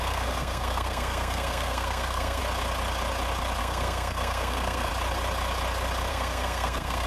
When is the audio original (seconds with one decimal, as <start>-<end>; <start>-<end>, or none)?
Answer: 2.4-3.6; 4.9-6.1